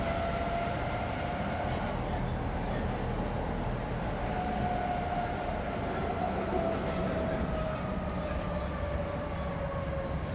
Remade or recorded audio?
recorded